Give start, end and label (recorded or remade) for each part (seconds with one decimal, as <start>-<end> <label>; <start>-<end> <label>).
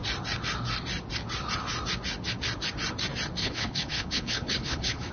0.0-3.4 recorded; 3.4-5.1 remade